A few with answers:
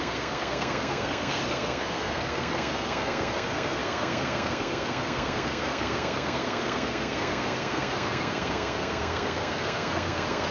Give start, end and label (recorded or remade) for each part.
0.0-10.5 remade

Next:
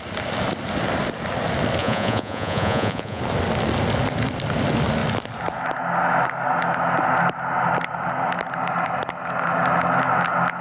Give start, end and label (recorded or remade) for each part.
0.0-1.8 recorded; 1.8-3.2 remade; 3.2-10.6 recorded

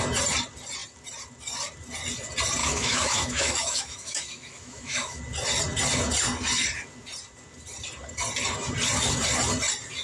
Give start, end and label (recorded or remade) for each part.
0.0-2.6 recorded; 2.6-5.2 remade; 5.2-10.0 recorded

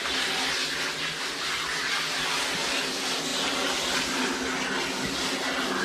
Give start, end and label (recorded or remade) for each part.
0.0-5.8 recorded

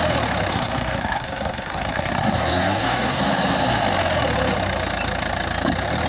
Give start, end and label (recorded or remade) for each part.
0.0-0.5 recorded; 0.5-3.2 remade; 3.2-6.1 recorded